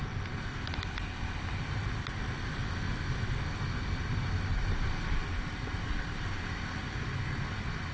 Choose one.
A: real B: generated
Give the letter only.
A